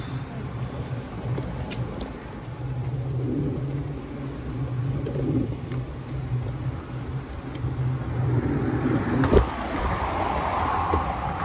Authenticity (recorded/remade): remade